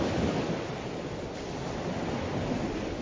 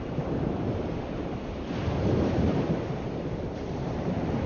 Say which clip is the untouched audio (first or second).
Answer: first